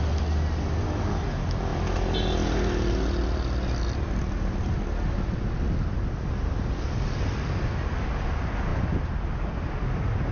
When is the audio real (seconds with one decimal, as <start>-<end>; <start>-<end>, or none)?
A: 0.0-10.3